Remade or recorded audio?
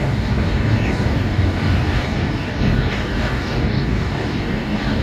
remade